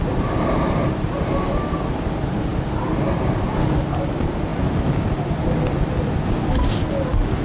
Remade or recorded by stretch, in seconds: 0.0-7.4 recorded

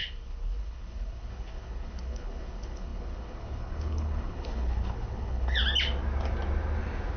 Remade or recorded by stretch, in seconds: 0.0-5.6 remade; 5.6-7.2 recorded

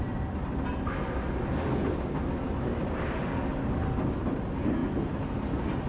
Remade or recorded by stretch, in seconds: 0.0-5.9 recorded

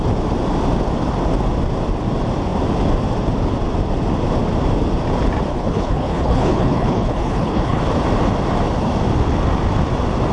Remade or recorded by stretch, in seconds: 0.0-5.5 recorded; 5.5-7.8 remade; 7.8-10.3 recorded

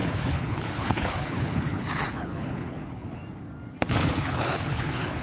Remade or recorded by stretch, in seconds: 0.0-3.2 remade; 3.2-3.9 recorded; 3.9-5.2 remade

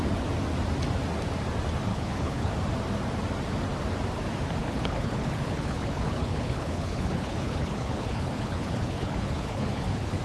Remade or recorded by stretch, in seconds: 0.0-1.9 recorded; 1.9-2.5 remade; 2.5-4.6 recorded; 4.6-10.2 remade

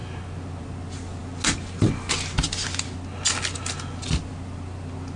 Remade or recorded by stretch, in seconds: 0.0-5.2 recorded

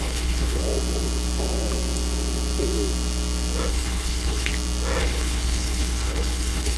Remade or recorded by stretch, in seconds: 0.0-0.6 remade; 0.6-3.7 recorded; 3.7-4.5 remade; 4.5-5.0 recorded; 5.0-6.8 remade